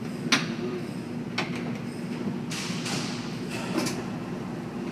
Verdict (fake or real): real